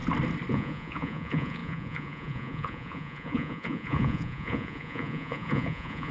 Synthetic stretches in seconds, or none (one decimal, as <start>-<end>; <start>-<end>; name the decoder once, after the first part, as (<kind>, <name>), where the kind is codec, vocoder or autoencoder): 0.5-6.1 (vocoder, Vocos)